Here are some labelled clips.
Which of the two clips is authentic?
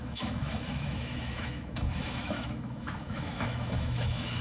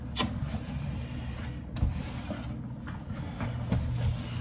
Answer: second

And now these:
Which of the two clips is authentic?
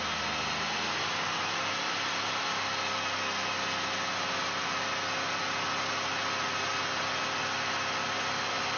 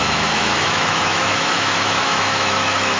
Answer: first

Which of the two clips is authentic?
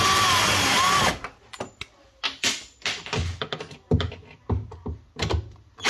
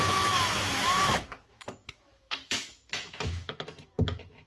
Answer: first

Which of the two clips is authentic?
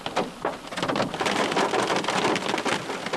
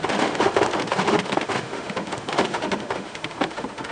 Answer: first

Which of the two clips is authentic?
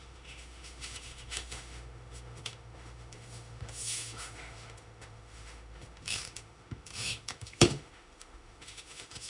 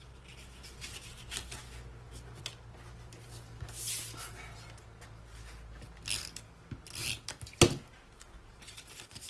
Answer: second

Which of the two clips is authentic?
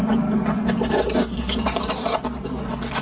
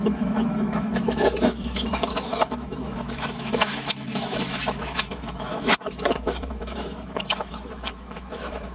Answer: first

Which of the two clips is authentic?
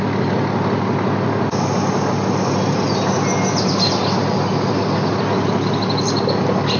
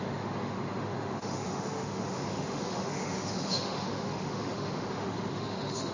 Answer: first